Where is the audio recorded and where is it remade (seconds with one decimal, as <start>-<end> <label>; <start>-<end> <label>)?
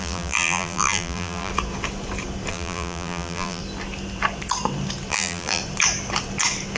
0.0-1.5 remade; 1.5-2.5 recorded; 2.5-3.6 remade; 3.6-5.1 recorded; 5.1-5.6 remade; 5.6-6.8 recorded